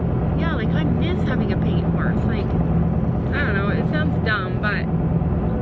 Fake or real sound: real